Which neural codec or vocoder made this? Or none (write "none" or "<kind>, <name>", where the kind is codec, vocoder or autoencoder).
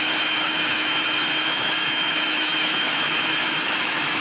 autoencoder, DAC-VAE